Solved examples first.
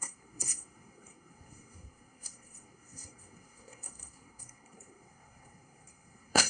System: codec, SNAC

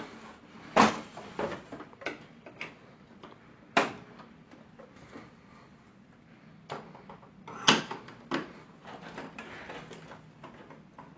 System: none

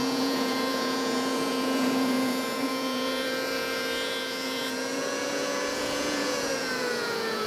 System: vocoder, Vocos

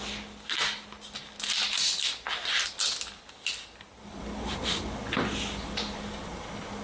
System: none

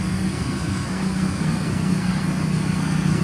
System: codec, SNAC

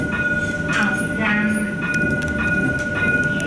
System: none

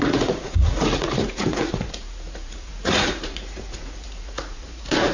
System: vocoder, Vocos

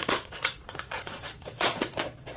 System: vocoder, Vocos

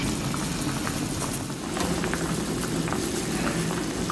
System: none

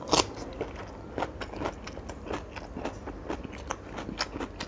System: none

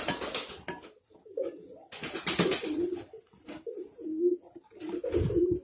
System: none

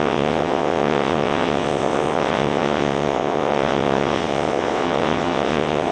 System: vocoder, WaveNeXt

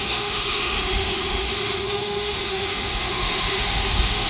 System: autoencoder, DAC-VAE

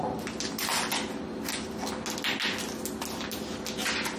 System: none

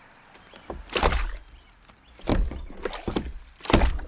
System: none